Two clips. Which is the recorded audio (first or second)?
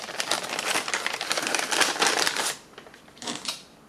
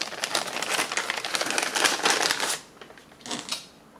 second